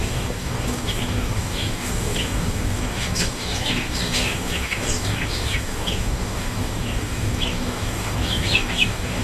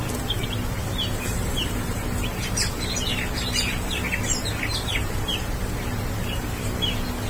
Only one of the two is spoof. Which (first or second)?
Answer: first